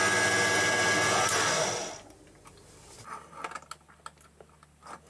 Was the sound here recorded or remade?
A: recorded